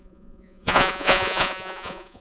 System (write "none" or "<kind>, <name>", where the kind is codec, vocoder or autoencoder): vocoder, Vocos